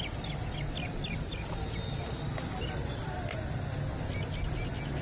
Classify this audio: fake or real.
real